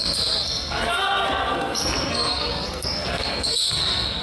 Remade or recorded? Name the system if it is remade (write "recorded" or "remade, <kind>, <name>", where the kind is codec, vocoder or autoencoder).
remade, codec, SNAC